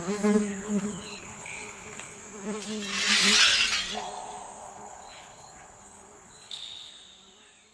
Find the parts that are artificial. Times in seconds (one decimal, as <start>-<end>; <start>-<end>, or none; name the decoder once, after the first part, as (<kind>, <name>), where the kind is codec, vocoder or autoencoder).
0.5-2.2 (codec, HILCodec); 4.6-6.9